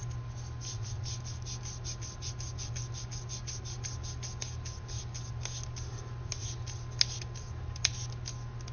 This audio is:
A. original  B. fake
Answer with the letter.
A